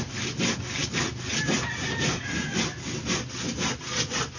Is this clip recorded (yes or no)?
yes